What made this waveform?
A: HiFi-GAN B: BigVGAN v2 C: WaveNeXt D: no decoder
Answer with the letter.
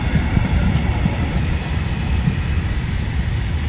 D